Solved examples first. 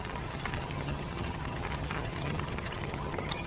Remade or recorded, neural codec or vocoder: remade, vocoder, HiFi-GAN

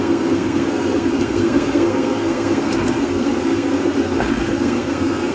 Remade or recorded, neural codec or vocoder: remade, codec, SNAC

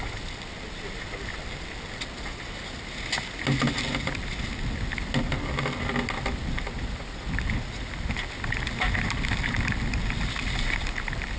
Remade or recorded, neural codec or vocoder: recorded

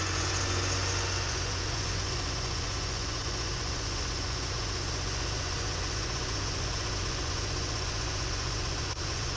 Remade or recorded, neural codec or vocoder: remade, vocoder, Vocos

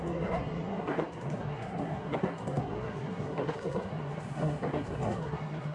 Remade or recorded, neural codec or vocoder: remade, codec, SNAC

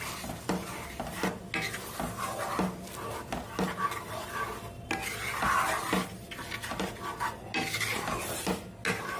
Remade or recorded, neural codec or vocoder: recorded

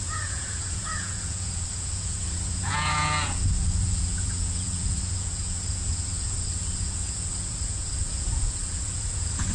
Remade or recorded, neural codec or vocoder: remade, vocoder, Vocos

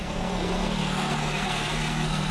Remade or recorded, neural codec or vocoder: remade, codec, SNAC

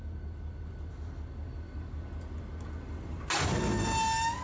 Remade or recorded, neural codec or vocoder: recorded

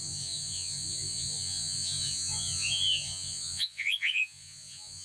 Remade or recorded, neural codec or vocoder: remade, vocoder, Vocos